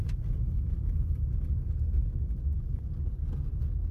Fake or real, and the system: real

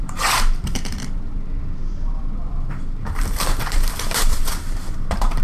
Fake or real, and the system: fake, vocoder, BigVGAN v2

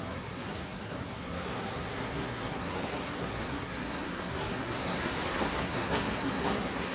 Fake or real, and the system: fake, codec, SNAC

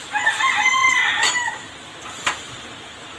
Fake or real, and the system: real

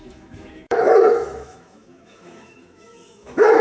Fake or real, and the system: fake, autoencoder, DAC-VAE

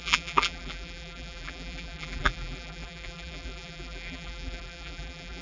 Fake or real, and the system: fake, vocoder, BigVGAN v2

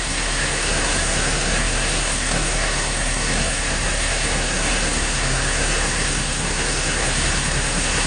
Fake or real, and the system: fake, codec, SNAC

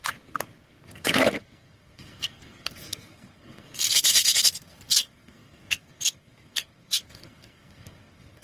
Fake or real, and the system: fake, codec, SNAC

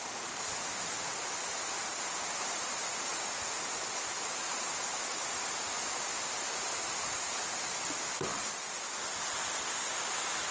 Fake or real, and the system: real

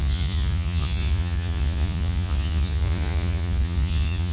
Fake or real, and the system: fake, vocoder, Vocos